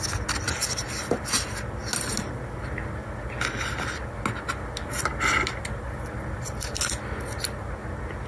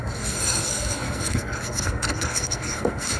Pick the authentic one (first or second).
first